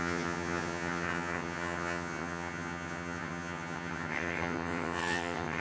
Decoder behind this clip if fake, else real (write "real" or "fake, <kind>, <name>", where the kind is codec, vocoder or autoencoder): fake, vocoder, HiFi-GAN